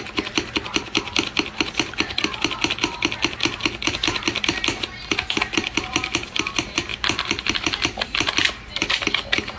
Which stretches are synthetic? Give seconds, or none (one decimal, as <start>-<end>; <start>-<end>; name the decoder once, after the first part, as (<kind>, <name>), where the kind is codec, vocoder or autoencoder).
none